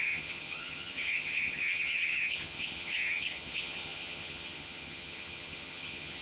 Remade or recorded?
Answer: remade